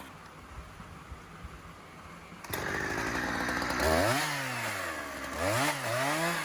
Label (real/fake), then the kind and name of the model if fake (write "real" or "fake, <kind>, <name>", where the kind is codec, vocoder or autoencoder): real